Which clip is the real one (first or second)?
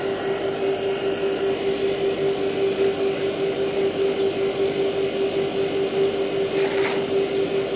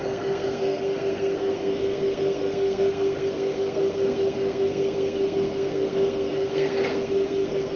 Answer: first